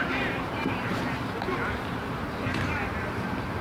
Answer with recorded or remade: remade